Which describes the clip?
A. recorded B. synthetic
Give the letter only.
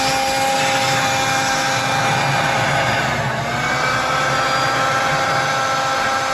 A